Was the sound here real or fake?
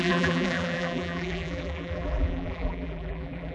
fake